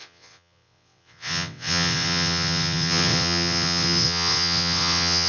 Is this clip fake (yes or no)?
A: yes